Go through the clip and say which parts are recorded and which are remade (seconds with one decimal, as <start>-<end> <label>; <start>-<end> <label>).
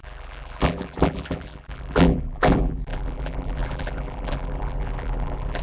0.0-5.6 remade